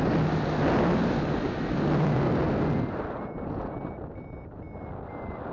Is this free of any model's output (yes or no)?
yes